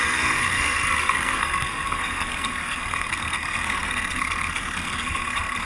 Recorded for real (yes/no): no